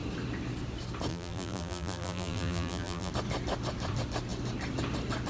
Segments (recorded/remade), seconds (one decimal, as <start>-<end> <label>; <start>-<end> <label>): 0.0-1.1 recorded; 1.1-3.1 remade; 3.1-5.3 recorded